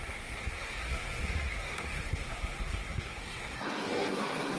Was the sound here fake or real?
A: fake